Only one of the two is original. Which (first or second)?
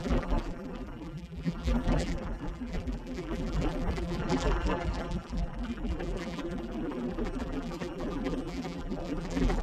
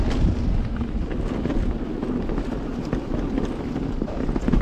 second